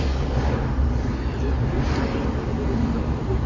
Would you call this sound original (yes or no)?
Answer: yes